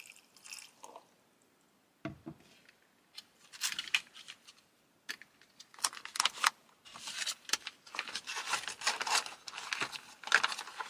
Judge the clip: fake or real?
real